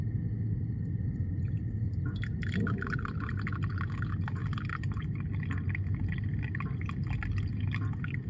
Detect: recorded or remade recorded